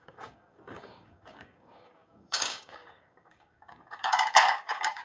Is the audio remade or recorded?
remade